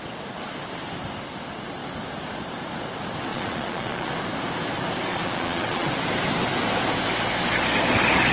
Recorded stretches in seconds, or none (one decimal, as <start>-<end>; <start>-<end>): 0.0-3.3; 4.1-5.1; 5.9-8.3